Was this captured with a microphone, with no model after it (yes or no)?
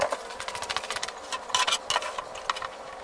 yes